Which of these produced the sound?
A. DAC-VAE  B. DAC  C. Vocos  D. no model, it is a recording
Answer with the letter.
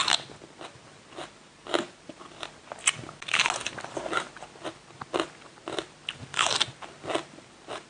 D